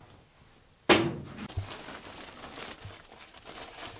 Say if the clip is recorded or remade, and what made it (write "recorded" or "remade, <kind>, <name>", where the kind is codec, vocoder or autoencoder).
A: recorded